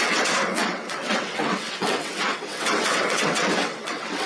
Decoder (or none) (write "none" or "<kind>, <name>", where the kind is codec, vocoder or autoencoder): vocoder, WaveNeXt